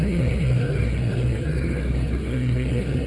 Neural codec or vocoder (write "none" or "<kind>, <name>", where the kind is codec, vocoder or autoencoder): codec, SNAC